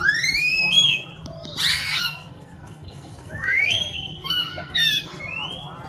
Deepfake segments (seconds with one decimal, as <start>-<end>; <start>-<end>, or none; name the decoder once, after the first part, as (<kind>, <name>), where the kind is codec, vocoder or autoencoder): 0.4-1.1 (codec, SNAC); 1.7-5.2